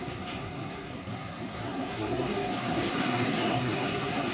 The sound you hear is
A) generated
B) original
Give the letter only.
A